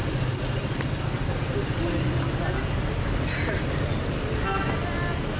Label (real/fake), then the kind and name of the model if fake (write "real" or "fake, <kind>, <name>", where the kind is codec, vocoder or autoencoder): real